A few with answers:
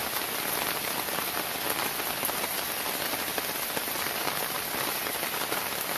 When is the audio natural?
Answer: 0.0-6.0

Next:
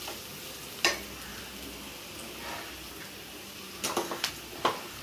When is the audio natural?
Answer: 0.0-5.0

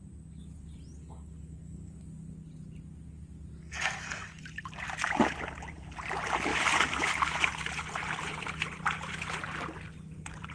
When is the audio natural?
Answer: 0.0-1.0; 2.0-3.6; 4.4-10.5